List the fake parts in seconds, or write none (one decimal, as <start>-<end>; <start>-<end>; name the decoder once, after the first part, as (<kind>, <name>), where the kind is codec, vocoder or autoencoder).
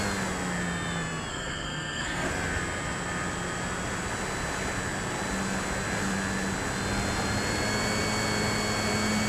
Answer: 1.3-2.3 (codec, SNAC)